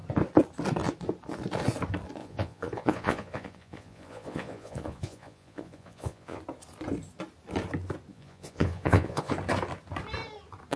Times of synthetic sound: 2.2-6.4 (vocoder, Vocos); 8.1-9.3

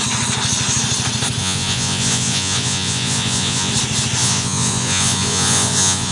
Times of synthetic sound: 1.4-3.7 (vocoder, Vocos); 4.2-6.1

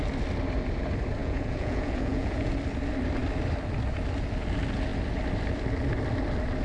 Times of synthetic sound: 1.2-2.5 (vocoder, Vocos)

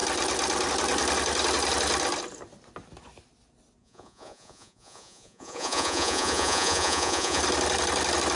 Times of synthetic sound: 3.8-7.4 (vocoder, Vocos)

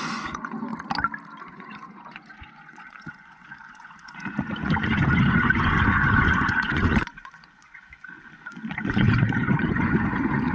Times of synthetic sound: 0.0-0.7 (vocoder, Vocos); 1.4-10.5